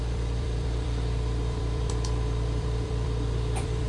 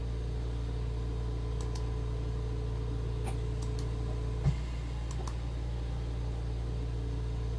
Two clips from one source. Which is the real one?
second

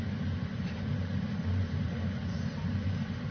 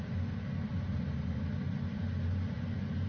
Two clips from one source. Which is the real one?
second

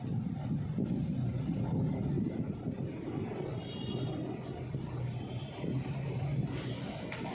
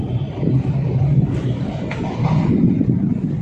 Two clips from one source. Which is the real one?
first